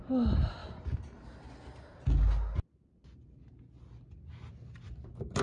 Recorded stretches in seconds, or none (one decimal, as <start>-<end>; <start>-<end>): 0.0-5.4